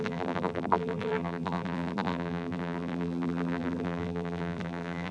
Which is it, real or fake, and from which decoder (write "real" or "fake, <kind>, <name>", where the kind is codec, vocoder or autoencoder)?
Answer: fake, vocoder, BigVGAN v2